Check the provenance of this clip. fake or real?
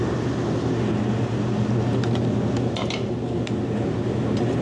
real